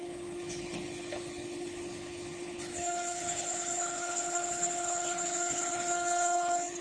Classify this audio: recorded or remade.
remade